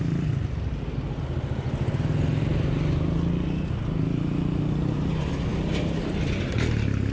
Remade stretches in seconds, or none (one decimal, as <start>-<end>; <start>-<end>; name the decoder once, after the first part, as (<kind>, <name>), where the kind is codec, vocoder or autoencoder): none